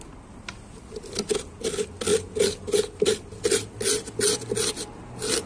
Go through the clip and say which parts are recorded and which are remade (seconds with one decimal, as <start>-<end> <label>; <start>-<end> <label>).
0.0-5.5 recorded